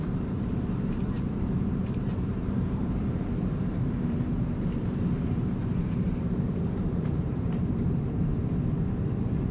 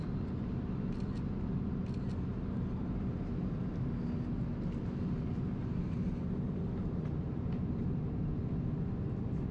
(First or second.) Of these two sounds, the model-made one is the first